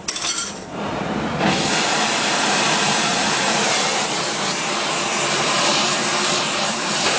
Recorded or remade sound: remade